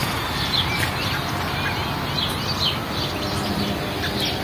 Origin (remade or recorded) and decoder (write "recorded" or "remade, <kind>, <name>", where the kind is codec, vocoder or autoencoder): recorded